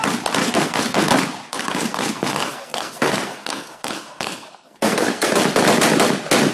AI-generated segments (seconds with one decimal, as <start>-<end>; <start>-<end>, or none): 0.4-1.1; 1.5-5.4